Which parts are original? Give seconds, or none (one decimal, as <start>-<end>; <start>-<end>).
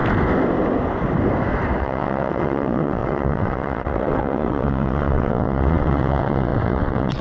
0.0-1.8